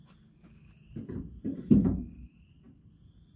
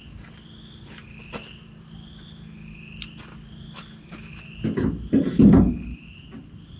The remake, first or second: first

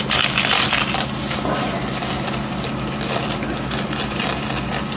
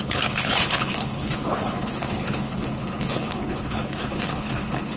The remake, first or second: second